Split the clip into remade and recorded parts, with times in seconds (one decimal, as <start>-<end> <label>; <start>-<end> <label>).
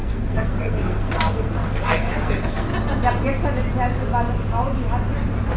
0.0-2.7 remade; 2.7-5.6 recorded